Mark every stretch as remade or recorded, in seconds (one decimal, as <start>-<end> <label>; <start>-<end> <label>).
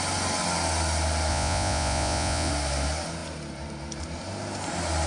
0.0-1.3 recorded; 1.3-2.5 remade; 2.5-5.1 recorded